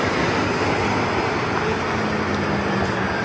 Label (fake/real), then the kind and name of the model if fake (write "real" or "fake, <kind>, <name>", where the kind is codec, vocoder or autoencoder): real